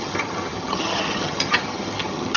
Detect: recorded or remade remade